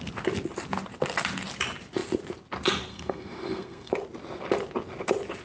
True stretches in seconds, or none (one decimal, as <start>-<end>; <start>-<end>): 0.0-2.9; 3.9-5.4